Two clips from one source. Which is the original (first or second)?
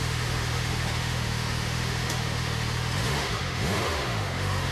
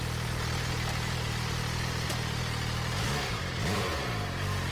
second